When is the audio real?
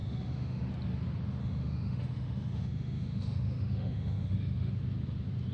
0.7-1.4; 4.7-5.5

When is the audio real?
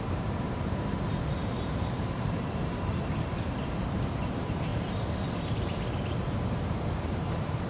none